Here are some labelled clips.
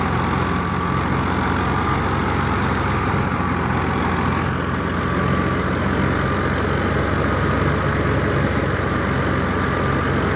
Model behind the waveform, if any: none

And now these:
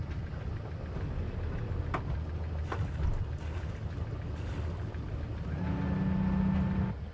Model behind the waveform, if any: none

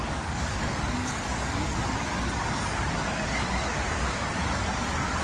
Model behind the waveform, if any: codec, DAC